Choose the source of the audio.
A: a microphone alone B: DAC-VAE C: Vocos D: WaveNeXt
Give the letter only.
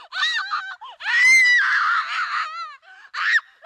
A